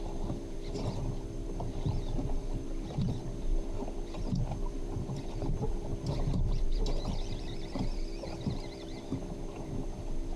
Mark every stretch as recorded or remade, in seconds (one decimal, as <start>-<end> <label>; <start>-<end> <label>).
0.0-5.9 remade; 5.9-6.5 recorded; 6.5-10.4 remade